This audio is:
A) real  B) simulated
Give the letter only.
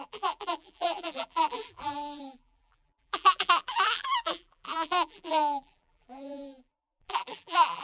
B